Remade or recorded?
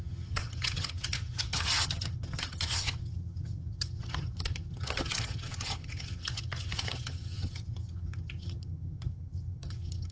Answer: remade